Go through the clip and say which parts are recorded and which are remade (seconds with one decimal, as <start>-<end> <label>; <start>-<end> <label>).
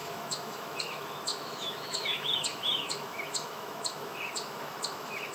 0.0-5.3 remade